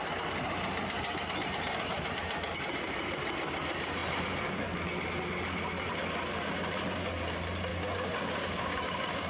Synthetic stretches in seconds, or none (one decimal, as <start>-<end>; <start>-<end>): 7.7-9.3